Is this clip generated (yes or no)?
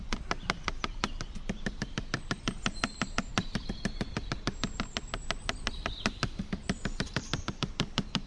yes